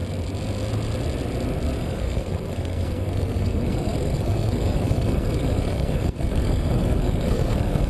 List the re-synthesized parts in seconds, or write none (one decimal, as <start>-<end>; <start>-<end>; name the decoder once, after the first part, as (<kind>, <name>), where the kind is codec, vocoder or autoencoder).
1.8-7.9 (codec, SNAC)